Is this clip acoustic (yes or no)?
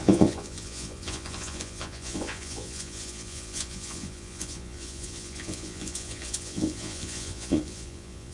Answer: no